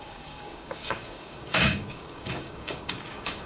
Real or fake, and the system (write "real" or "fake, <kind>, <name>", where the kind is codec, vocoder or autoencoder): fake, codec, DAC